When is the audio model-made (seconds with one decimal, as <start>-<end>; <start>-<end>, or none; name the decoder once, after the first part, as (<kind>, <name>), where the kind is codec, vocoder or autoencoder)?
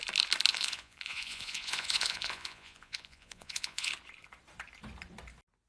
0.5-3.9 (vocoder, Vocos)